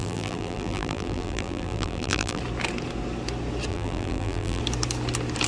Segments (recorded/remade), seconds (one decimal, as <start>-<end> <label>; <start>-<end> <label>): 0.0-2.4 remade; 2.4-3.7 recorded; 3.7-4.6 remade; 4.6-5.5 recorded